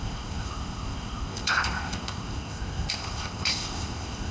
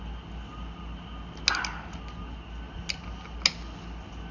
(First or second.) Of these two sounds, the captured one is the second